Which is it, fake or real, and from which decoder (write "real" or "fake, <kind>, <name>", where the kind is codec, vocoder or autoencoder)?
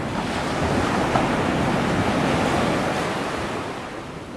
real